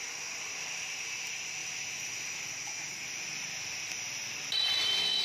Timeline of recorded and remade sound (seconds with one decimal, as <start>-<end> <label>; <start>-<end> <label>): 0.0-5.2 recorded